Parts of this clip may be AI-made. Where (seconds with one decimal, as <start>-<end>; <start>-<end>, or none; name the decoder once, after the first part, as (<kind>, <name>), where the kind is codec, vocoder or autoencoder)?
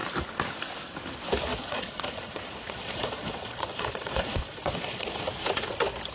1.5-5.2 (vocoder, Vocos)